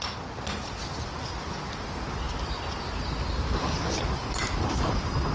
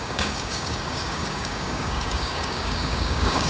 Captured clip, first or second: first